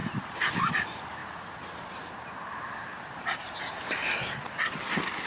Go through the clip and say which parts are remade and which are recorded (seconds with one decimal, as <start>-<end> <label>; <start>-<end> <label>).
0.0-1.2 recorded; 1.2-4.4 remade; 4.4-5.3 recorded